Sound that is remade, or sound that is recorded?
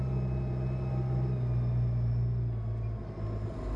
recorded